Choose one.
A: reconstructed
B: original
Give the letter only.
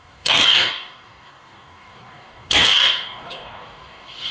A